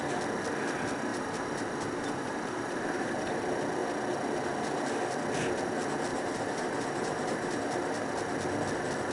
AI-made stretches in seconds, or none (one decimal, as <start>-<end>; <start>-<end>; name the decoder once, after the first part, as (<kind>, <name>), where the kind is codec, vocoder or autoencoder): 1.1-3.4 (vocoder, BigVGAN v2); 6.1-7.6